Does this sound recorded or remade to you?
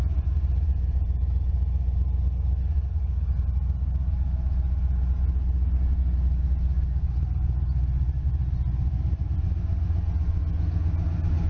recorded